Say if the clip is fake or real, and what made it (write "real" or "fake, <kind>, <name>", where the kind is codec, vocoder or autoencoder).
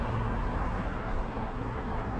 fake, codec, SNAC